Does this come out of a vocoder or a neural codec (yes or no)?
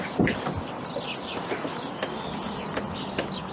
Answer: no